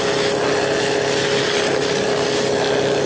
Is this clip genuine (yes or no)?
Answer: yes